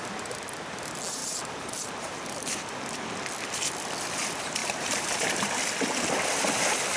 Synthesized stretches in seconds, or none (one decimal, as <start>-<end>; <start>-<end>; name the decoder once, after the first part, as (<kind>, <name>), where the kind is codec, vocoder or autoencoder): 1.2-2.7 (vocoder, BigVGAN v2); 4.6-5.5